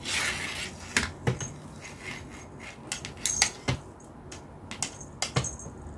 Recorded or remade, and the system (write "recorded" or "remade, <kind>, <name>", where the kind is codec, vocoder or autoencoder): recorded